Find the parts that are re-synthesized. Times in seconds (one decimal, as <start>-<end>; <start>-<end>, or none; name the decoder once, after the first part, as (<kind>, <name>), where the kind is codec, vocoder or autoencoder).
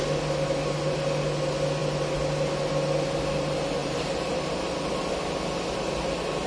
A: 3.8-4.4 (vocoder, BigVGAN v2)